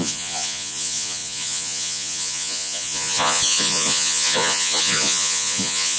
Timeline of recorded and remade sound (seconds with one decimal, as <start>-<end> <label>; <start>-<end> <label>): 0.0-6.0 remade